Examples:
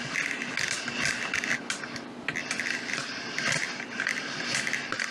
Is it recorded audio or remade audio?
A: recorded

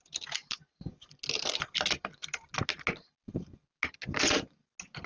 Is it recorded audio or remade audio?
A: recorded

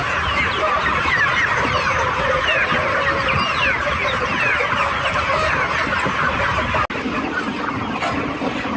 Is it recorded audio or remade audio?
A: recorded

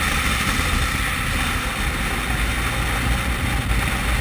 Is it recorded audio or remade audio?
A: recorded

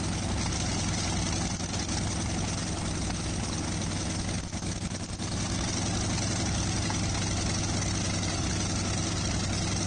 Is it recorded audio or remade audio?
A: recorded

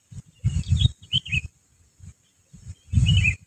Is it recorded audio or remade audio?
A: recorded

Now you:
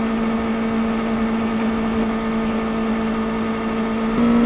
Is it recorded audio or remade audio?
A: recorded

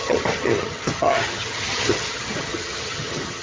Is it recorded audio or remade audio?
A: remade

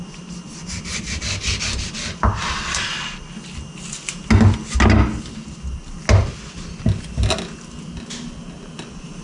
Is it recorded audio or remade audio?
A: recorded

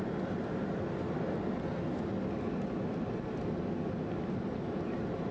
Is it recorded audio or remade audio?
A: recorded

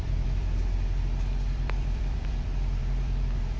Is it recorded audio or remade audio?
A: remade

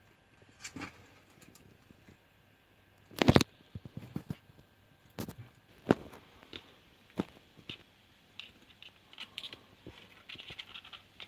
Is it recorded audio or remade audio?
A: recorded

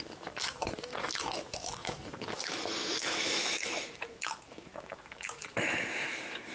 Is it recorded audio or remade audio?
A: remade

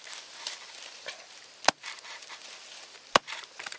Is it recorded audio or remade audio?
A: recorded